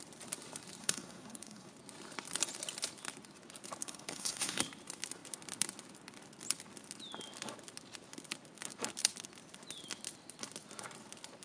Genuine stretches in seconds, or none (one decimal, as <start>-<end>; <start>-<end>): 0.0-0.8; 1.7-3.8; 4.6-11.4

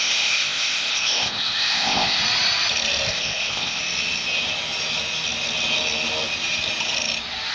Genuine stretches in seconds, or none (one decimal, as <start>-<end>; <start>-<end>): 2.2-3.1; 3.8-7.5

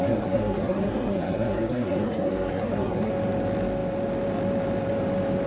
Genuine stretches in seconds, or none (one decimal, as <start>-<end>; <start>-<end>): 3.1-5.5

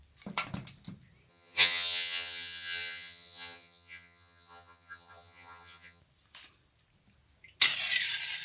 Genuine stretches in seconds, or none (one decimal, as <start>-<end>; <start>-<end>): 0.0-1.3; 6.0-8.4